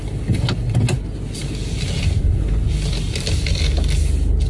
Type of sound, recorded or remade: recorded